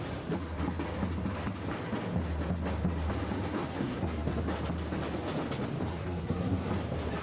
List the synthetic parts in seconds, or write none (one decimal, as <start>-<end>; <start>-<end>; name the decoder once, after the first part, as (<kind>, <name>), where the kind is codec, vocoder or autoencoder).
3.7-4.4 (codec, SNAC); 5.9-6.7